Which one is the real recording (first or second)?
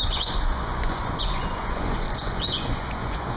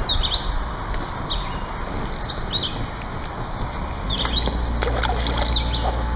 second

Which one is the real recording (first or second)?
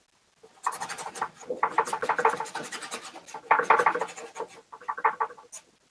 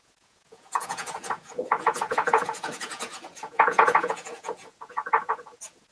first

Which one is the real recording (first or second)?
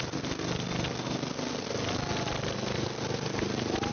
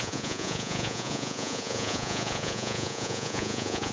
first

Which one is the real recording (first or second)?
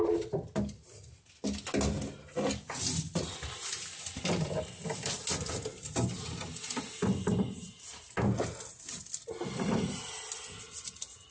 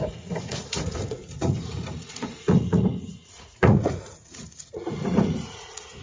first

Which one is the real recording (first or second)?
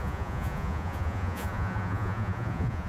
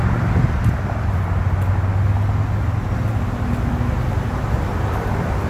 second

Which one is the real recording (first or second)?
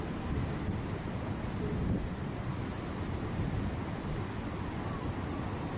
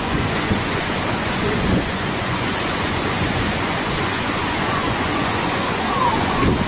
first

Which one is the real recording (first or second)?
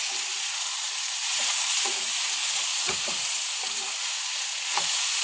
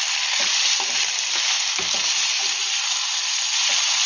second